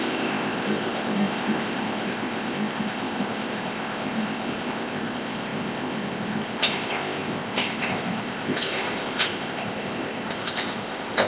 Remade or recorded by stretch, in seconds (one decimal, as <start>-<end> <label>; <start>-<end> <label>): 0.0-11.3 remade